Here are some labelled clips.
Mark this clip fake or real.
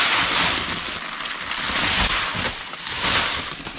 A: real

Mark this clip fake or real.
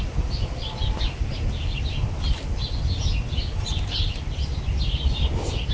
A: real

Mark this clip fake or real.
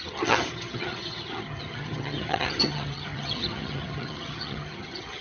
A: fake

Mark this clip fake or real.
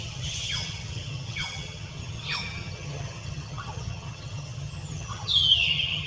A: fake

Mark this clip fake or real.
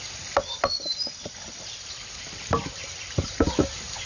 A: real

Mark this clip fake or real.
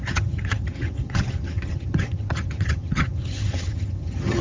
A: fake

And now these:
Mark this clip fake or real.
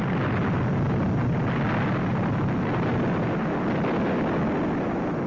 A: real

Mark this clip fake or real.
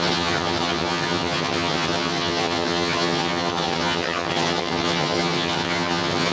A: fake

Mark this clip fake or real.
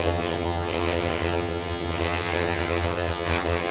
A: fake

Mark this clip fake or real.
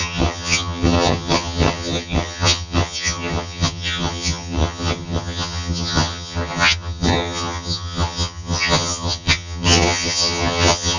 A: fake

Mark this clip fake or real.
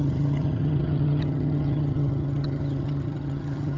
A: fake